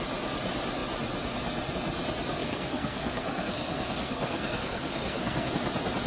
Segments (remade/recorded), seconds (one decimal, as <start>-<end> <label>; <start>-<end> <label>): 0.0-2.4 recorded; 2.4-5.5 remade; 5.5-6.1 recorded